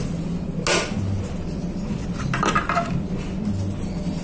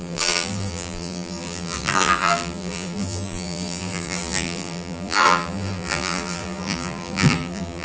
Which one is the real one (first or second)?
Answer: first